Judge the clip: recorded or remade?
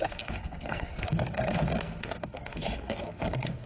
remade